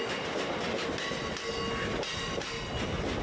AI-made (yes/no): no